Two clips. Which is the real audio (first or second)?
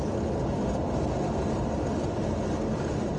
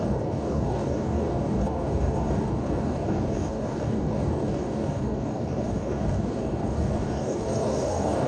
first